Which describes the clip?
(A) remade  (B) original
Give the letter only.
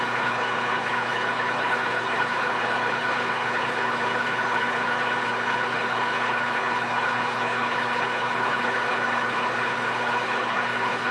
A